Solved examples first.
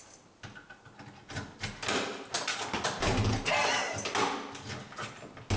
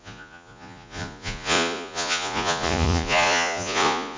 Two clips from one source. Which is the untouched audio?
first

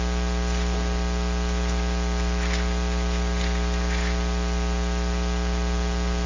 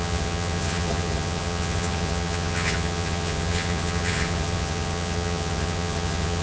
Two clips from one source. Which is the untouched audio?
first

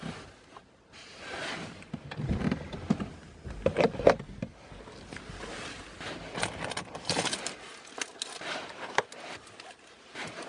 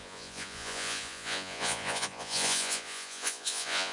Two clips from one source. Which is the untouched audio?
first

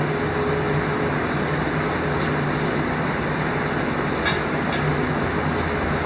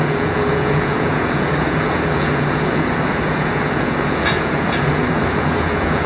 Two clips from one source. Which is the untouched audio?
first